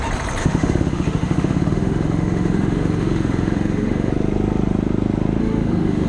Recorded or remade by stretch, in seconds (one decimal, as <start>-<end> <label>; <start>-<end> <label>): 0.0-0.4 recorded; 0.4-4.1 remade; 4.1-5.4 recorded; 5.4-6.1 remade